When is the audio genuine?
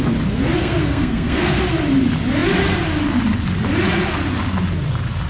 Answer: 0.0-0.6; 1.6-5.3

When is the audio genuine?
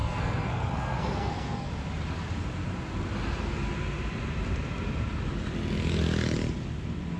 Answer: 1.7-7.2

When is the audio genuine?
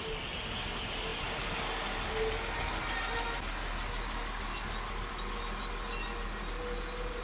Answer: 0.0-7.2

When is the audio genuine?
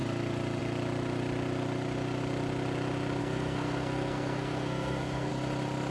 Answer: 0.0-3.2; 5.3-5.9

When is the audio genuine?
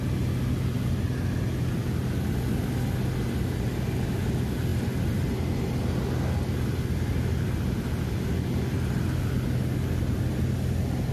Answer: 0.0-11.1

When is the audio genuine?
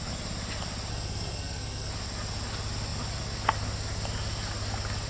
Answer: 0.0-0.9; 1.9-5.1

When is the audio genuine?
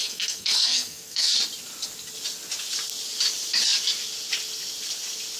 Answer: 1.3-5.4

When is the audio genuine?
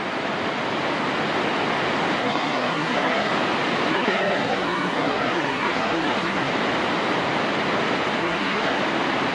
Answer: 0.0-2.2; 3.3-3.9; 6.5-8.2; 8.8-9.3